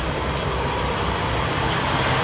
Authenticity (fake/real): real